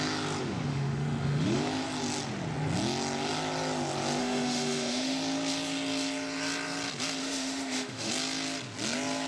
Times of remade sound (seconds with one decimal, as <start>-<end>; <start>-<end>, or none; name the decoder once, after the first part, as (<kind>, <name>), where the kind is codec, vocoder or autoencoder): 0.7-1.6 (autoencoder, DAC-VAE); 4.2-5.2; 7.2-8.1